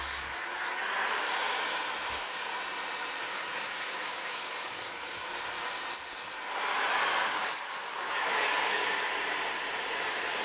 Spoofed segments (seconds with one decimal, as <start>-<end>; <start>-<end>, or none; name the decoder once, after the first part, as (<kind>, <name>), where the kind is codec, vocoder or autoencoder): 0.0-0.8 (codec, DAC); 2.1-2.5; 3.2-5.3; 7.2-9.1; 10.0-10.4